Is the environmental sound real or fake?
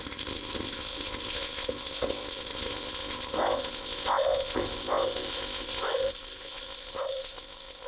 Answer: fake